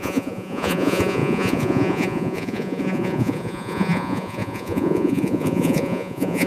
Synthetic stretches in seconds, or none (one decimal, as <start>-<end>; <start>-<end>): 0.0-6.5